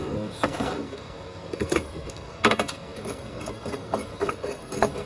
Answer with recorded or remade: remade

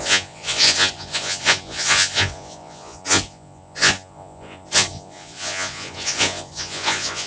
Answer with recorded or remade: remade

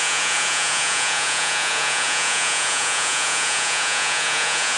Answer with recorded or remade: remade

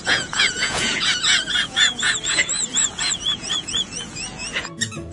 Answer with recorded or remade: remade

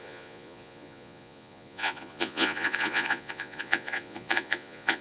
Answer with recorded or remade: remade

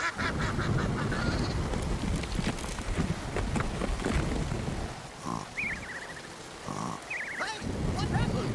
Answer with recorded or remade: recorded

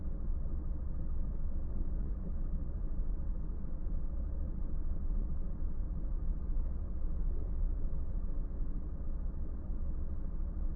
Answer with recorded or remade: remade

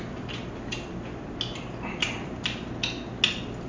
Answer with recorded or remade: recorded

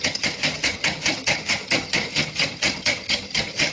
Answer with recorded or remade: remade